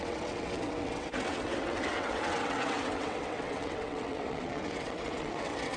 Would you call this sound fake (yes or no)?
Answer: yes